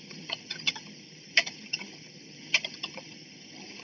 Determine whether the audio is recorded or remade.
remade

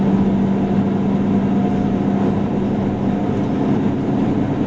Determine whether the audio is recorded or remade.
recorded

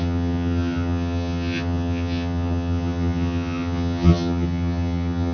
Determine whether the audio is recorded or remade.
remade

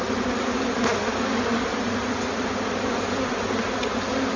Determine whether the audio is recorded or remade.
recorded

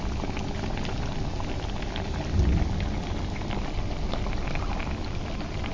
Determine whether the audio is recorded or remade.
recorded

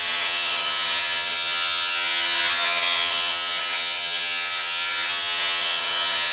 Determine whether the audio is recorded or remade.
remade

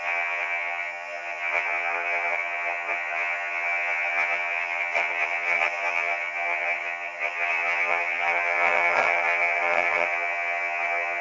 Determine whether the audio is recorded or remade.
remade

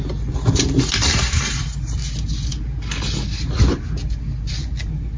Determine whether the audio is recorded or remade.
recorded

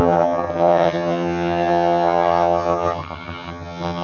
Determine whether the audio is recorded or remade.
remade